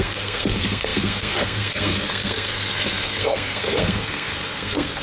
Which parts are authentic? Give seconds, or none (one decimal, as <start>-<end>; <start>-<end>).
none